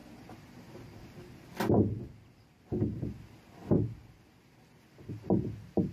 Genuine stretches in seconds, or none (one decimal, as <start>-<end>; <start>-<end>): 0.0-5.9